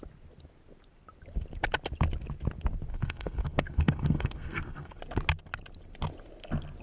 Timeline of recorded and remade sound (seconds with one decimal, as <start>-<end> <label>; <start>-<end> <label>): 0.0-2.9 recorded; 2.9-5.0 remade; 5.0-6.8 recorded